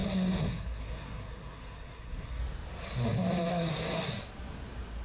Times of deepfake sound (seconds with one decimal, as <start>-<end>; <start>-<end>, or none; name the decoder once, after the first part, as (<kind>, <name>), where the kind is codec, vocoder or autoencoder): 0.0-2.4 (codec, SNAC); 3.5-4.1